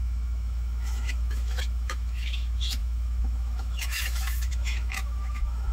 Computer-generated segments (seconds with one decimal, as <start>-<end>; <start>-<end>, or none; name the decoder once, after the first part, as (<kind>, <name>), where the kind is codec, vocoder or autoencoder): 0.0-5.7 (autoencoder, DAC-VAE)